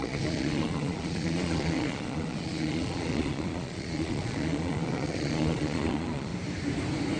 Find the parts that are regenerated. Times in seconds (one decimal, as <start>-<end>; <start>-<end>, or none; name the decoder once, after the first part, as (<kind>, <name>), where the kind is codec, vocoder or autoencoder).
0.0-6.3 (vocoder, Vocos)